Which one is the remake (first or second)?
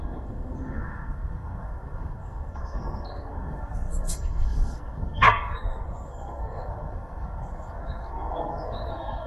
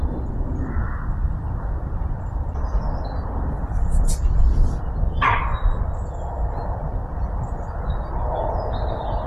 first